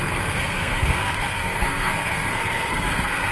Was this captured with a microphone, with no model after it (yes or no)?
no